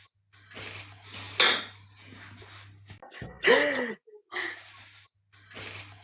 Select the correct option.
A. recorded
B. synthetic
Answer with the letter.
A